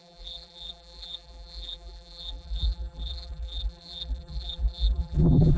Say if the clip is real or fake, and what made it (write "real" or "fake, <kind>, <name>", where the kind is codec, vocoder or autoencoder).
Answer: fake, vocoder, BigVGAN v2